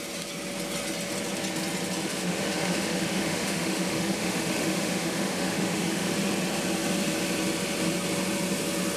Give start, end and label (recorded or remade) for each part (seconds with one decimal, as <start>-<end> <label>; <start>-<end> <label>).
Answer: 0.0-2.0 recorded; 2.0-6.1 remade; 6.1-9.0 recorded